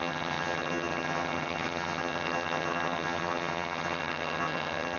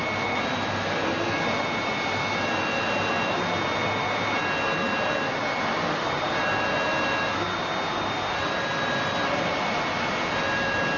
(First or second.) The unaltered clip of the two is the second